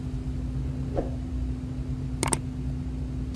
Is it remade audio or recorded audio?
recorded